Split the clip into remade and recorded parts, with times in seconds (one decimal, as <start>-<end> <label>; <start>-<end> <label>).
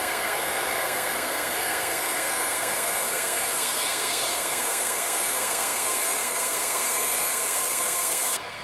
0.0-8.6 remade